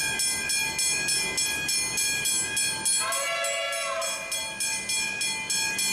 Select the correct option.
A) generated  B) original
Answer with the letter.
B